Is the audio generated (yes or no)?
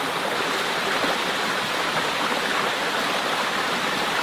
no